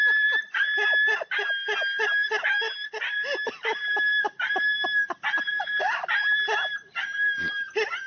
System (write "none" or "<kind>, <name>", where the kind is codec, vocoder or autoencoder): none